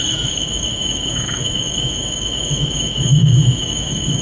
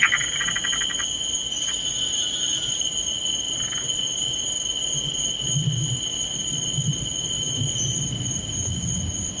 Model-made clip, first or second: first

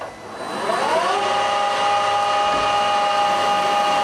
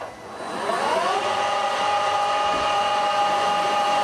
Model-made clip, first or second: second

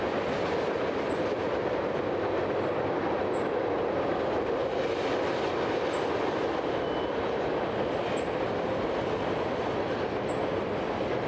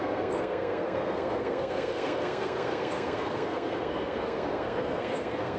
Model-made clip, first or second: second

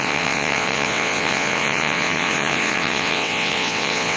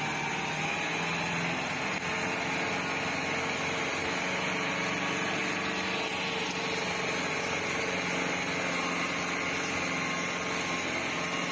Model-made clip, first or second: first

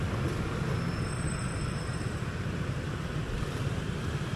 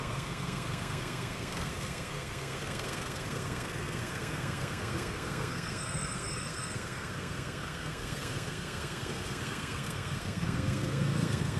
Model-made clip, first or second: second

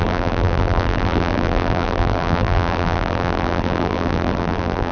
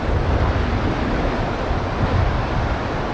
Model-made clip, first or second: first